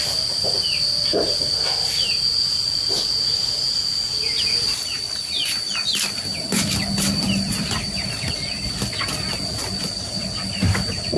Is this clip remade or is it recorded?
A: recorded